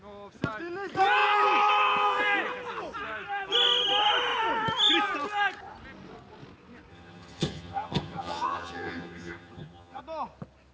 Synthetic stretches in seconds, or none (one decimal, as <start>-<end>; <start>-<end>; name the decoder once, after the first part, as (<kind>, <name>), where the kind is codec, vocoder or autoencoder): 6.9-10.0 (vocoder, HiFi-GAN)